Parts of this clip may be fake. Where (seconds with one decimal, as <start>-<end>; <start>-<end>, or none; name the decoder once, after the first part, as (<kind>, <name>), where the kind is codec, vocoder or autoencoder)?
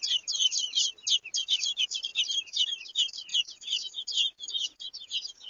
3.3-5.5 (vocoder, Vocos)